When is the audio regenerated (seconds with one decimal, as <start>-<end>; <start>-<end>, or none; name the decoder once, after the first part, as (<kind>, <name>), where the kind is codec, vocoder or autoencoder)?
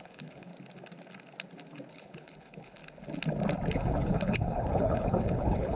0.0-0.5 (codec, HILCodec); 1.9-2.8; 3.7-5.8